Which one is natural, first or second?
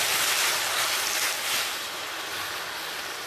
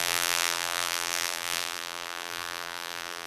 first